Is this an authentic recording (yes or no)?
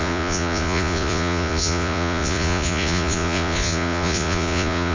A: no